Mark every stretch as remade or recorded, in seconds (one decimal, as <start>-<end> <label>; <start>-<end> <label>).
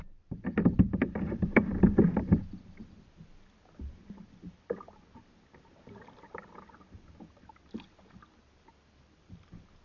0.0-9.8 recorded